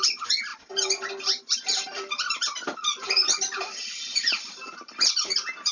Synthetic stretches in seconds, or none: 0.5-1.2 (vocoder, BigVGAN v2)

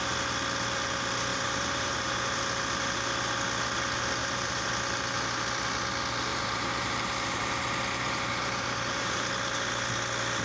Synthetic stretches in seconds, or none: 1.3-2.4 (vocoder, BigVGAN v2); 4.2-4.7; 6.3-9.3

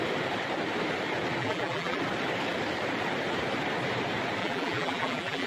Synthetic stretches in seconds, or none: 1.4-2.0 (vocoder, BigVGAN v2); 4.4-5.5

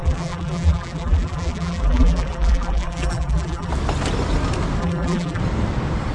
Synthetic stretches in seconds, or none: 0.0-3.7 (vocoder, BigVGAN v2); 4.8-5.4

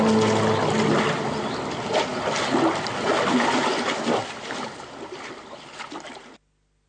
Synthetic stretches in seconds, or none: none

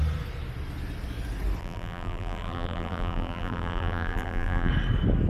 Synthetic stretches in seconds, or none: 1.6-4.7 (vocoder, BigVGAN v2)

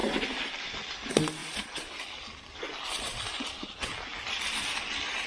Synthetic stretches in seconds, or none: 0.0-0.6 (vocoder, BigVGAN v2); 1.4-2.6; 4.1-5.3